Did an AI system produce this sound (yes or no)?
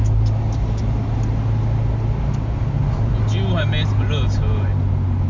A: no